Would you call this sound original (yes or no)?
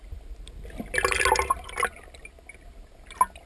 yes